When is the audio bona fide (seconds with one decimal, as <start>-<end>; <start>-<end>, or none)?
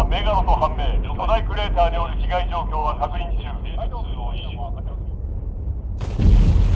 1.4-2.8; 5.7-6.7